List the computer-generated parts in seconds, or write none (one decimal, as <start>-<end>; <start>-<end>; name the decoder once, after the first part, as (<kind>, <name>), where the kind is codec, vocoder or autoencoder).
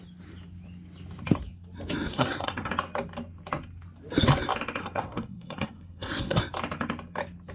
2.1-2.7 (codec, SNAC); 4.8-6.4